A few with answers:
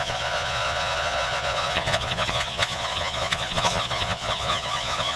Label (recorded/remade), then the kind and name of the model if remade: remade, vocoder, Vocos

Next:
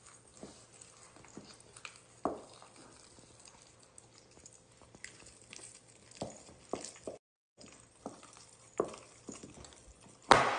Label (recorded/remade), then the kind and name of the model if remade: recorded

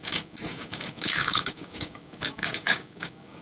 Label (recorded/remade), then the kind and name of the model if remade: remade, codec, DAC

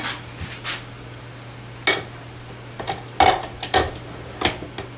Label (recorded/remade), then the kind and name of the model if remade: recorded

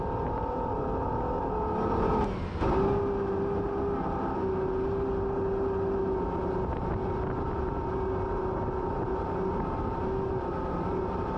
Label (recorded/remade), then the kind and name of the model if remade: recorded